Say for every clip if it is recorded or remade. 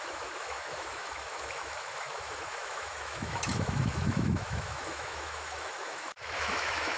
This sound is remade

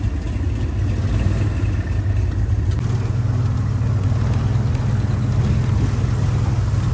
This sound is recorded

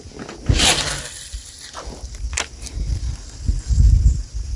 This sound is recorded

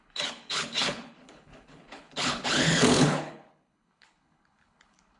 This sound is remade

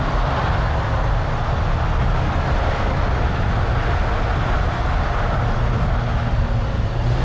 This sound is recorded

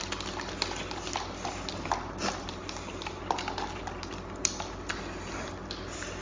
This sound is recorded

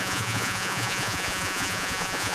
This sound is remade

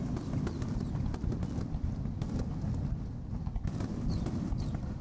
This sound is recorded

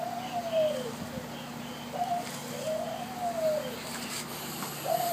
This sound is remade